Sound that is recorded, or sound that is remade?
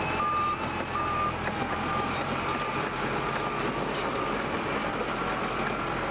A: recorded